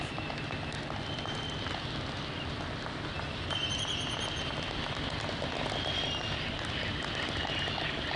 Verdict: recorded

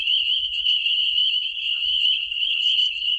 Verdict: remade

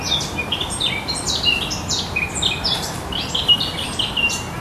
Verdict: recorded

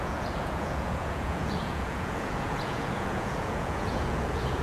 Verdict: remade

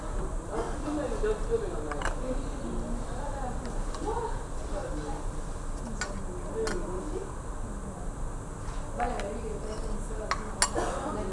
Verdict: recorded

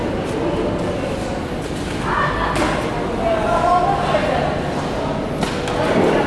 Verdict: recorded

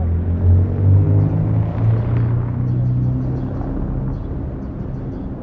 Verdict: recorded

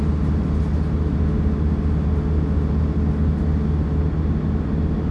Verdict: recorded